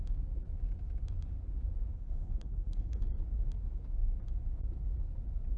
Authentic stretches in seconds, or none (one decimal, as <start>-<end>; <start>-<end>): 0.0-1.9; 3.0-5.6